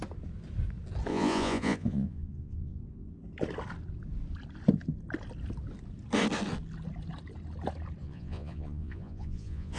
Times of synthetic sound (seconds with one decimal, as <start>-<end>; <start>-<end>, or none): 1.1-2.8; 8.0-9.8